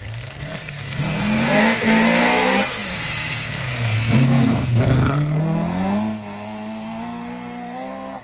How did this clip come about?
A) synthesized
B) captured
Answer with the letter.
A